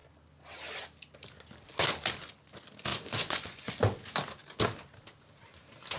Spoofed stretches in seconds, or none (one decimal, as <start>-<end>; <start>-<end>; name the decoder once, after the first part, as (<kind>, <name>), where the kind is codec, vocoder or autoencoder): 2.9-3.7 (vocoder, Vocos)